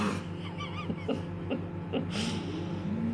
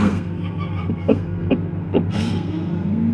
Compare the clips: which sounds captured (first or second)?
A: first